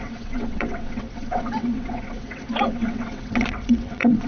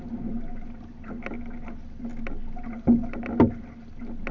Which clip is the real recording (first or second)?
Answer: second